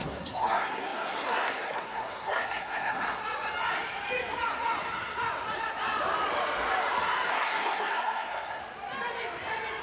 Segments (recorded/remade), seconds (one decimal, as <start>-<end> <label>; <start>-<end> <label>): 0.0-3.2 remade; 3.2-7.3 recorded; 7.3-8.6 remade; 8.6-9.8 recorded